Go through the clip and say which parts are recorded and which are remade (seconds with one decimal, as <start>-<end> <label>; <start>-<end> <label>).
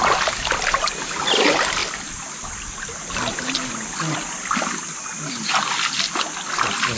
0.0-7.0 recorded